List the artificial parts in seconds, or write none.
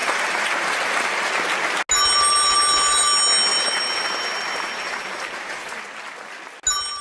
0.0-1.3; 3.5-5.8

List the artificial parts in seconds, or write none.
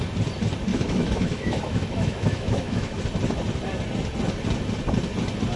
0.7-3.0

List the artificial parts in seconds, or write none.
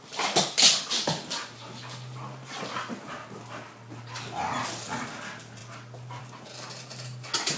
none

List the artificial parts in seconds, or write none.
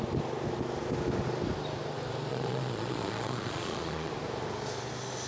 2.3-4.1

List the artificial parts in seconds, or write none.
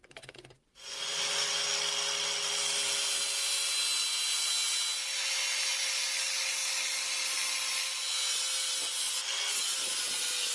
0.0-1.7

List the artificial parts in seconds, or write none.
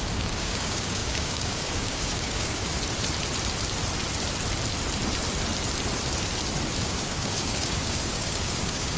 0.0-2.7; 6.8-9.0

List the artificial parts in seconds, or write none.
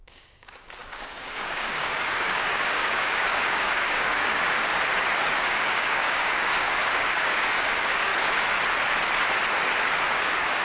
0.0-4.7; 5.4-8.1; 10.1-10.6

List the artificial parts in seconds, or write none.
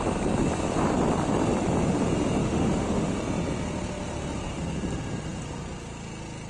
2.4-3.2